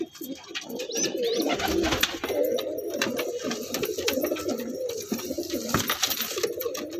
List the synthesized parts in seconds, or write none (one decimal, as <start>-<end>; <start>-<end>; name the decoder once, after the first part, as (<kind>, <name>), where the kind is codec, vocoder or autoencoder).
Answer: 0.0-1.3 (vocoder, BigVGAN v2); 1.9-7.0

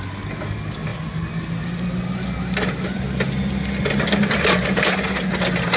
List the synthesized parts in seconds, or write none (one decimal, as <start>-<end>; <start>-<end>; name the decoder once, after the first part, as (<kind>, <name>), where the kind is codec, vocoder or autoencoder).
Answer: none

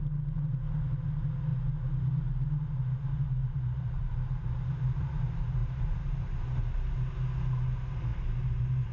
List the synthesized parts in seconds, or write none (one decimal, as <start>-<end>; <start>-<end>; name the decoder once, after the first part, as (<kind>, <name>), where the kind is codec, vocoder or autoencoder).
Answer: 3.4-5.0 (vocoder, BigVGAN v2); 5.6-6.5

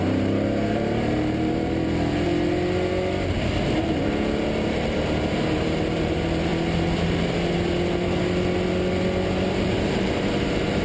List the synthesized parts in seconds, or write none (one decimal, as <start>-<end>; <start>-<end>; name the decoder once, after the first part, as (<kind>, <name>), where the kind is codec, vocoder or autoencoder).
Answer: 0.0-2.3 (vocoder, BigVGAN v2); 5.3-6.5; 9.6-10.8